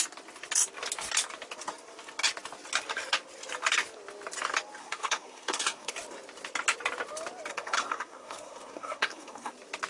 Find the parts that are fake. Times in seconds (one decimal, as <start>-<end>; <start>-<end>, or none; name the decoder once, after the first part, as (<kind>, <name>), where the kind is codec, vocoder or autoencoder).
4.8-5.9 (codec, SNAC); 7.5-9.5